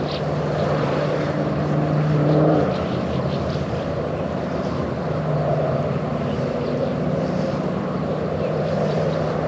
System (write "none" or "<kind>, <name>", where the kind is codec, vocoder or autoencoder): vocoder, BigVGAN v2